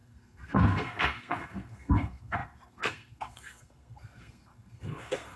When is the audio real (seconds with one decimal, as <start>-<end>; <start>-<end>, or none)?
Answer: none